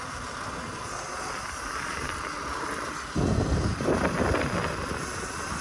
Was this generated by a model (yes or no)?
no